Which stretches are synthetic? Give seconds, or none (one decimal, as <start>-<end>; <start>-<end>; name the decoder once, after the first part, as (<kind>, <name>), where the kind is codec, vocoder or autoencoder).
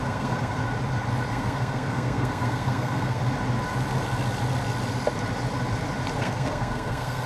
0.0-0.6 (codec, SNAC); 1.3-3.2; 6.2-7.3